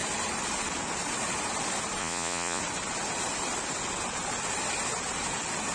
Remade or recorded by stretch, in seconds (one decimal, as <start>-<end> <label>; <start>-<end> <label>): 0.0-2.0 recorded; 2.0-2.6 remade; 2.6-5.7 recorded